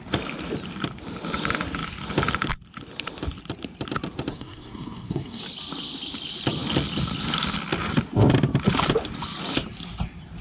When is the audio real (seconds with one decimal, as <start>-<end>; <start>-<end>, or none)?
0.0-4.3; 5.4-10.4

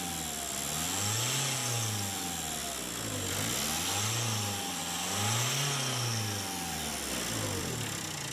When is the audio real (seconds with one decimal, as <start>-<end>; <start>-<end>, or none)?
0.0-8.3

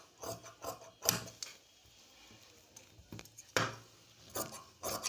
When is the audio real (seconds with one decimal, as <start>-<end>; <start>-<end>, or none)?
0.0-5.1

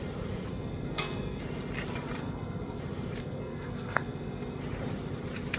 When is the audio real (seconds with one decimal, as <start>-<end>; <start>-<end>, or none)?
0.0-0.5; 1.4-2.2; 2.8-3.2; 4.6-5.6

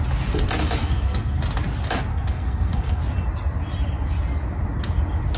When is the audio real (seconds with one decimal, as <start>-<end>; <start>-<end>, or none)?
0.0-0.8; 1.4-2.1; 3.0-5.4

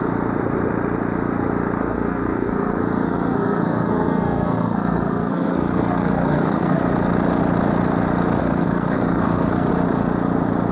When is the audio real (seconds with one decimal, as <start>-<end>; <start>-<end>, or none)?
0.0-1.8; 6.8-8.4; 9.7-10.7